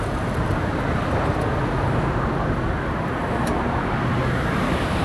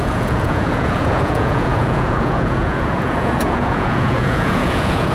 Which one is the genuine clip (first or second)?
first